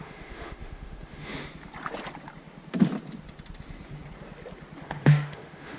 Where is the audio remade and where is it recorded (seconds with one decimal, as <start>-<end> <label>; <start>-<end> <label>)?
0.0-1.3 remade; 1.3-4.8 recorded; 4.8-5.8 remade